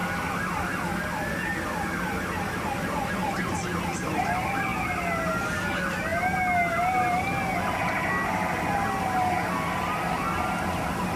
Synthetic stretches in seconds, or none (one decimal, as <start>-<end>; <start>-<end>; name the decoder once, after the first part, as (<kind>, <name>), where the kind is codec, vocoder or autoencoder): none